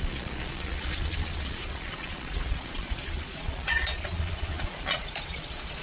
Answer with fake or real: fake